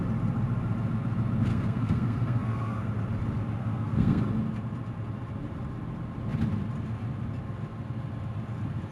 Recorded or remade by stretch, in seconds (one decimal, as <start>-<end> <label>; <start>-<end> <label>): 0.0-1.5 recorded; 1.5-2.9 remade; 2.9-3.6 recorded; 3.6-4.2 remade; 4.2-8.9 recorded